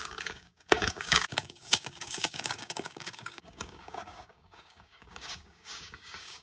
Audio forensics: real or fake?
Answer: fake